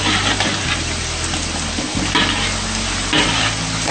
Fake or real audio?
real